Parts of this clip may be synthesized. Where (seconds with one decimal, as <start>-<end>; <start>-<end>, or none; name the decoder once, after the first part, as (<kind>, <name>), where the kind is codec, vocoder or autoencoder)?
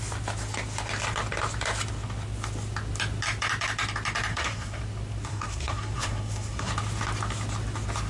4.3-4.8 (codec, SNAC); 5.3-6.7